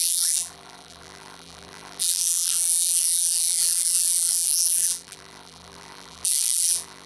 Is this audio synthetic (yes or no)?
yes